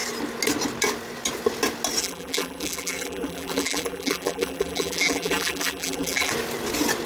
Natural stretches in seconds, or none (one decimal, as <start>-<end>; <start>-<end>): 0.0-2.0; 6.3-7.1